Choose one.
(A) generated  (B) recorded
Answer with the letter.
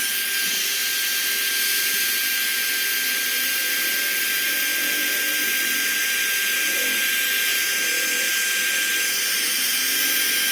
B